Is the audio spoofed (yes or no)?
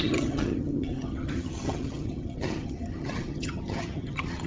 yes